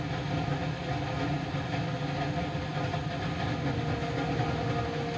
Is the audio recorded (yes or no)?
yes